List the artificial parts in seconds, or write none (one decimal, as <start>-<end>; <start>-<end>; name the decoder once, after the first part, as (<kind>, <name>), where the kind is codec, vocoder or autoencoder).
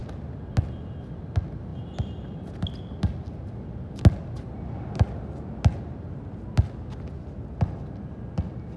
none